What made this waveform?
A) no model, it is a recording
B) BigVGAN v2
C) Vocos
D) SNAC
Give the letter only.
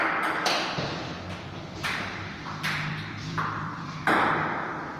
B